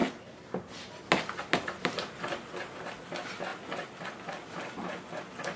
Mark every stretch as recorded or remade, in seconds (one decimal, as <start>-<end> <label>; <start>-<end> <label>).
0.0-5.6 recorded